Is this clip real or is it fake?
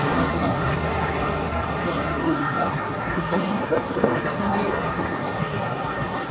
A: fake